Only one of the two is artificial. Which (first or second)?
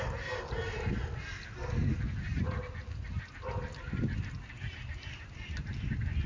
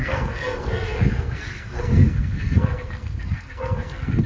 second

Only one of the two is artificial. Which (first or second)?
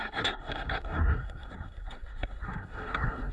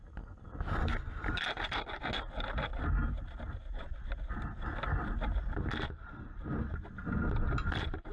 first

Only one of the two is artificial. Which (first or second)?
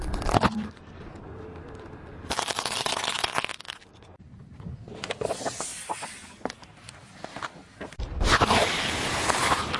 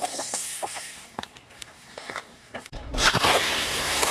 second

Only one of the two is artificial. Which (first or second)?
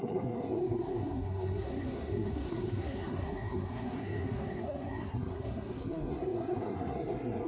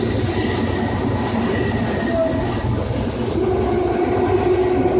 first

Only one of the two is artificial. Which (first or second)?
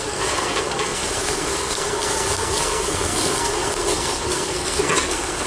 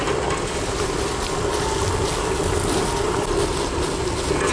first